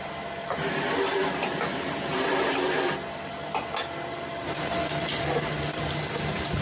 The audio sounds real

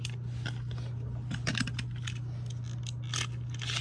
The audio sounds real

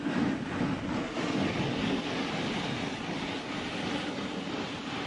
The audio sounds real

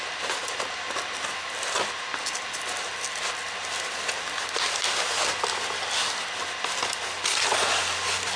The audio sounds real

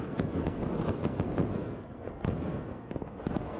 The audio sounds fake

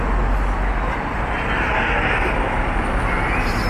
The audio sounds real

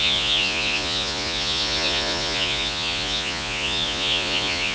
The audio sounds fake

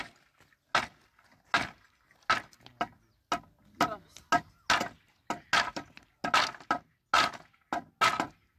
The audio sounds real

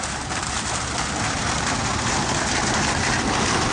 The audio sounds real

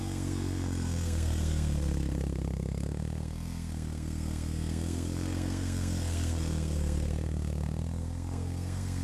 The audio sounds fake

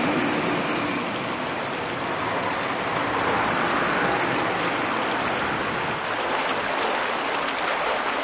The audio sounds real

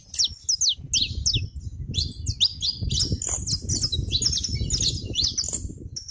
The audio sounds real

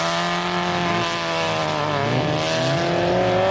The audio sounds real